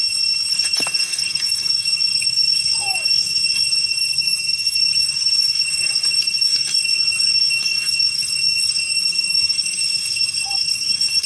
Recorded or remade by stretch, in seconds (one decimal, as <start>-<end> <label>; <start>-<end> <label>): 0.0-0.5 recorded; 0.5-11.3 remade